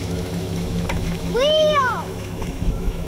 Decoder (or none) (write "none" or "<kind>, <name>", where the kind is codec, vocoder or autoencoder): autoencoder, DAC-VAE